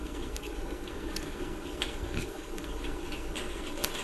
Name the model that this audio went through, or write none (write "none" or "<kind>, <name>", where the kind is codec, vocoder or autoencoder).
codec, SNAC